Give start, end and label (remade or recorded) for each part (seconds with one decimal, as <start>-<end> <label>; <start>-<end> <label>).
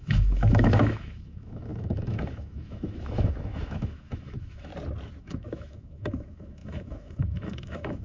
0.0-4.7 remade; 4.7-5.2 recorded; 5.2-8.0 remade